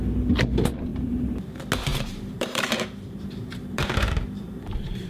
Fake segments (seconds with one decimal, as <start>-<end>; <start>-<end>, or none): 0.9-1.5; 1.9-5.1